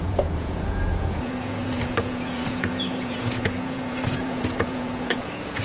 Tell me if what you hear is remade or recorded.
remade